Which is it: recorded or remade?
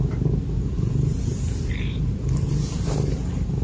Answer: remade